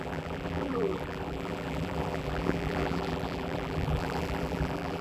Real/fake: fake